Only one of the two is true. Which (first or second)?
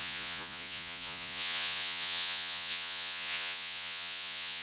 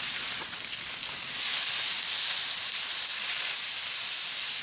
second